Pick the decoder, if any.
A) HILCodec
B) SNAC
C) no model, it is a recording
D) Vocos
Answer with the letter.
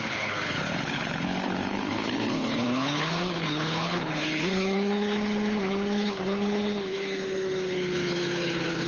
A